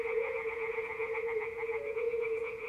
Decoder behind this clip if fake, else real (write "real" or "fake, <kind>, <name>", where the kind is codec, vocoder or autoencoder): fake, vocoder, Vocos